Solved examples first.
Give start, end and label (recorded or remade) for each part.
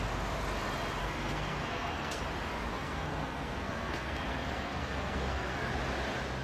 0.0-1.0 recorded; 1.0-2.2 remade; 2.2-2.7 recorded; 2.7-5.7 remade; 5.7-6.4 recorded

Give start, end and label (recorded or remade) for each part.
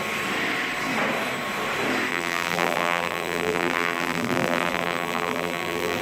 0.0-2.1 recorded; 2.1-6.0 remade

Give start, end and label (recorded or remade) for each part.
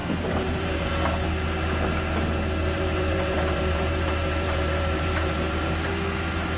0.0-0.9 remade; 0.9-2.6 recorded; 2.6-5.9 remade; 5.9-6.6 recorded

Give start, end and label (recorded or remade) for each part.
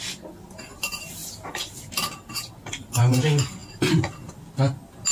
0.0-5.1 recorded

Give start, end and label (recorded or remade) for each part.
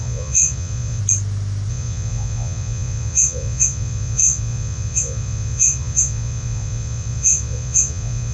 0.0-1.0 remade; 1.0-1.7 recorded; 1.7-8.3 remade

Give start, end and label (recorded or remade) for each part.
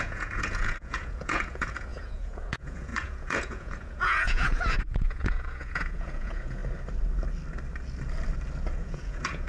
0.0-6.6 remade; 6.6-8.8 recorded; 8.8-9.5 remade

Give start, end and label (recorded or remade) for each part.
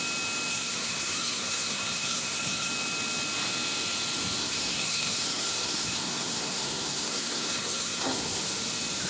0.0-0.5 recorded; 0.5-2.7 remade; 2.7-4.4 recorded; 4.4-8.4 remade; 8.4-9.1 recorded